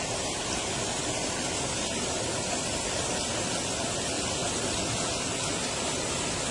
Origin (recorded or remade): recorded